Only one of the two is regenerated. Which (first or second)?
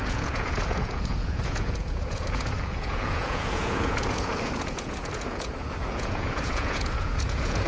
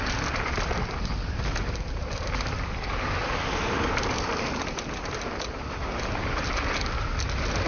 first